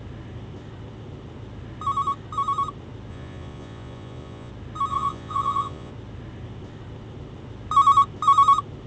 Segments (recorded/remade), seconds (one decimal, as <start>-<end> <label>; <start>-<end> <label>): 0.0-3.1 recorded; 3.1-4.5 remade; 4.5-4.9 recorded; 4.9-5.9 remade; 5.9-8.9 recorded